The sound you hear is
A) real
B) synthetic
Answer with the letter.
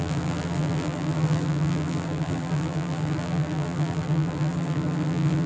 B